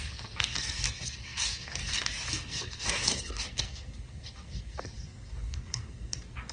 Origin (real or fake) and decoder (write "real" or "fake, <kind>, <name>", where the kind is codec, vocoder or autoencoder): fake, codec, SNAC